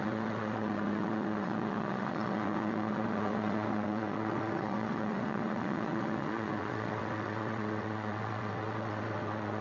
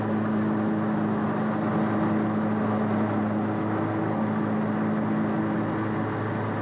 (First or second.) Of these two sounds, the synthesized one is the first